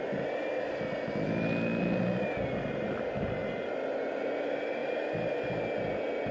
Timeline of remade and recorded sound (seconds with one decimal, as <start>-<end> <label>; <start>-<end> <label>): 0.0-6.3 recorded